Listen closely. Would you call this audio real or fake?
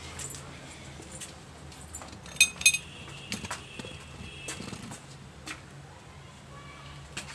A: real